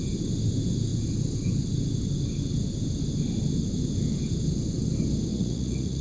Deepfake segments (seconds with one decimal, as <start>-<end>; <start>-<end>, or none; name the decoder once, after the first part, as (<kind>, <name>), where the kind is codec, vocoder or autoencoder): 5.3-6.0 (vocoder, Vocos)